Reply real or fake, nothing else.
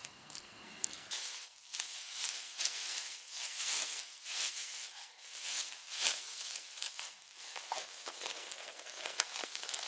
fake